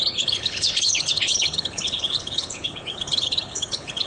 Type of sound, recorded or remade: remade